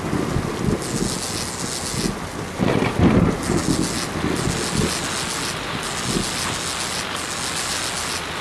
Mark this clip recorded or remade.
recorded